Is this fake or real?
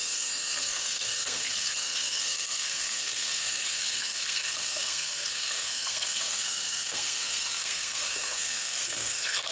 fake